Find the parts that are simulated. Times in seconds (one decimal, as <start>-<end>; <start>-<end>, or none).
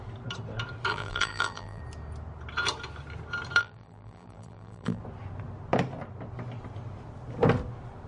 0.9-1.8; 3.6-5.0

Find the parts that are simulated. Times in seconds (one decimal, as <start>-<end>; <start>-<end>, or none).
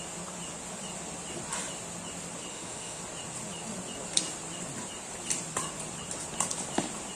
2.5-3.0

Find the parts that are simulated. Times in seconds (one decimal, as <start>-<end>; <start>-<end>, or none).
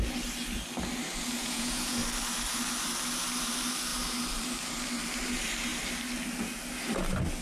1.4-2.0